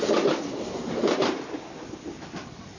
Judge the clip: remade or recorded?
recorded